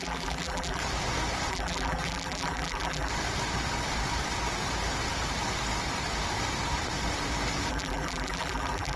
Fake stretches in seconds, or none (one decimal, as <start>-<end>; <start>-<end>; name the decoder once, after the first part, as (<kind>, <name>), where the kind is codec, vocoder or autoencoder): 0.0-0.8 (vocoder, BigVGAN v2); 1.5-3.1; 7.7-9.0